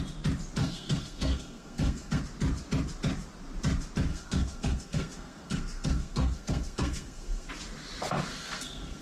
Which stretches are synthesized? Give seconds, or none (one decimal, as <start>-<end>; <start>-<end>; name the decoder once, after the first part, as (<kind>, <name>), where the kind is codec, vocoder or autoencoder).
0.6-2.2 (codec, SNAC); 4.1-7.5; 8.3-9.0